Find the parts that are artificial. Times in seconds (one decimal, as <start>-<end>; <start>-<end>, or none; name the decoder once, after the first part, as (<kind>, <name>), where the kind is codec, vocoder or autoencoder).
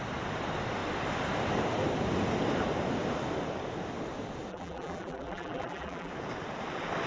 4.5-6.1 (vocoder, BigVGAN v2)